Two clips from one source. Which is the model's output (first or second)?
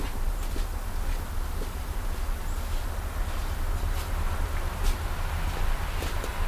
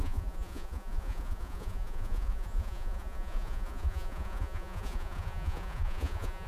second